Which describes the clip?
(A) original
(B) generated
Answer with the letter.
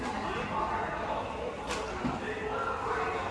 A